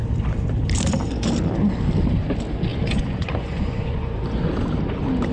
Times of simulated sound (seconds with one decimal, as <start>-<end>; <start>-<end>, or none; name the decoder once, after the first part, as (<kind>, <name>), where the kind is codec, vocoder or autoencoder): 2.7-4.2 (vocoder, Vocos)